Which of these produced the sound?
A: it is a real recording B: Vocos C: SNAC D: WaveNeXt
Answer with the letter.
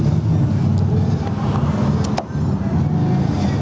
A